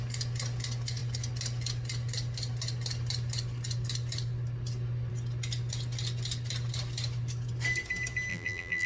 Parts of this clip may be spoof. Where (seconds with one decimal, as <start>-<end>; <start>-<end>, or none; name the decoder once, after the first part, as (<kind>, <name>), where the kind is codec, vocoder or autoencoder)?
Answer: 8.3-8.9 (vocoder, BigVGAN v2)